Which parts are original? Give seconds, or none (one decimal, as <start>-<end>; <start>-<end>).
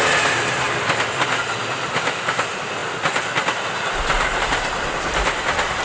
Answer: 0.0-5.8